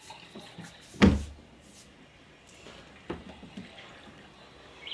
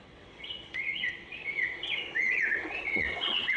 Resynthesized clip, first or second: second